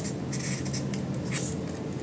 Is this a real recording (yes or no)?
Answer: yes